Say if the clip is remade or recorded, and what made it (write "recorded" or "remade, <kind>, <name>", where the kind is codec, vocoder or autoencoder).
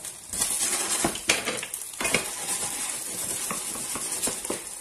recorded